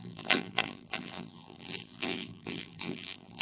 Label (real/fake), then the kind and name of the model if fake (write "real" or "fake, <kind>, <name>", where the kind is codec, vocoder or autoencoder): fake, vocoder, BigVGAN v2